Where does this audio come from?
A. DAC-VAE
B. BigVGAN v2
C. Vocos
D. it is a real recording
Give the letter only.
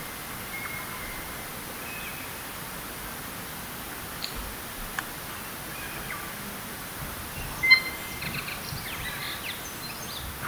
D